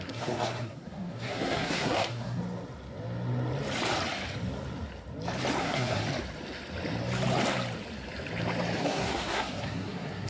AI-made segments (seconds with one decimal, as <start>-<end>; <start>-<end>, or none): 0.0-2.4; 5.6-6.0; 8.8-10.3